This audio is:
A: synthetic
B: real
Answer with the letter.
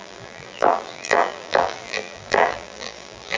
A